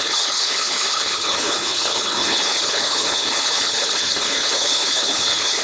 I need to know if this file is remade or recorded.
remade